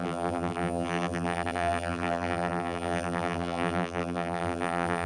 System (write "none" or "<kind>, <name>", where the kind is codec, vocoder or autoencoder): vocoder, BigVGAN v2